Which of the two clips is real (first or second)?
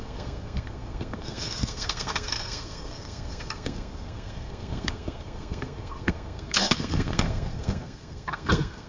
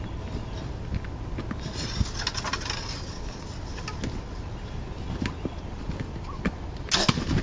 second